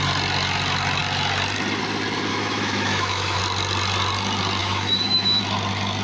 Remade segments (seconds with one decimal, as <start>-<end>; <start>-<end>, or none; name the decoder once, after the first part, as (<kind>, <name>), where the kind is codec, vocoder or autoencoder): 2.3-3.4 (autoencoder, DAC-VAE); 4.6-5.4